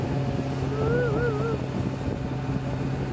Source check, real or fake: real